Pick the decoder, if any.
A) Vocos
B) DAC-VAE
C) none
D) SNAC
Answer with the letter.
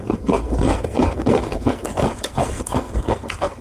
D